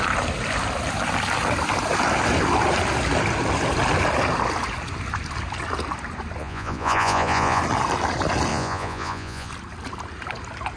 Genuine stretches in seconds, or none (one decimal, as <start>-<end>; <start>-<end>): 0.0-6.4; 7.6-8.5; 9.5-10.8